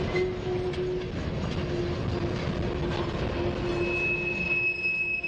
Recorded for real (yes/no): yes